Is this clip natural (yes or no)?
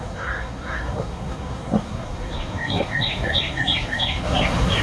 no